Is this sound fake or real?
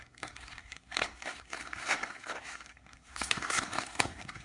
fake